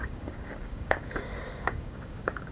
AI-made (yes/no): yes